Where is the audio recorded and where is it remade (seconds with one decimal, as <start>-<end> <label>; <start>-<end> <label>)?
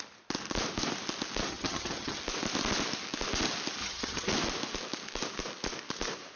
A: 0.0-1.5 recorded; 1.5-2.2 remade; 2.2-3.8 recorded; 3.8-4.3 remade; 4.3-6.4 recorded